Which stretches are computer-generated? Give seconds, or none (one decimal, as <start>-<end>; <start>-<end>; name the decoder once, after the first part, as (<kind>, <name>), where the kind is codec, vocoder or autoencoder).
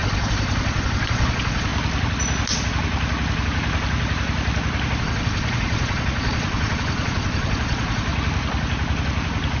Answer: 0.0-1.7 (vocoder, Vocos); 5.0-8.1